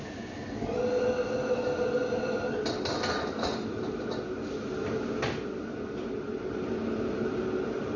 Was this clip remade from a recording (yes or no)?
no